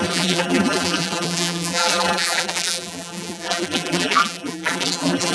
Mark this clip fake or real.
fake